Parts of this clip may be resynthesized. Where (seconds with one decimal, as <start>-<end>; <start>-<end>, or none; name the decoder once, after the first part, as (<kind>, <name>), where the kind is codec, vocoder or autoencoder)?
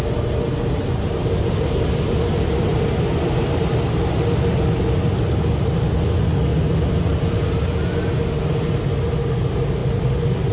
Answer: none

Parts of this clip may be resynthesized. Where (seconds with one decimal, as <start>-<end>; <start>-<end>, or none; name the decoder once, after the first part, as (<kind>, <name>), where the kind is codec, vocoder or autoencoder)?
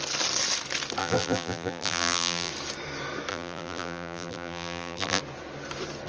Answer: 1.0-2.5 (vocoder, BigVGAN v2); 3.3-5.2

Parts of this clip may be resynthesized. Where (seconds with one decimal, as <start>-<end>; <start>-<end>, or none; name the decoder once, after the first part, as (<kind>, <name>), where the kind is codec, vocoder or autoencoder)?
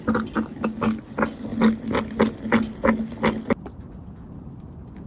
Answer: none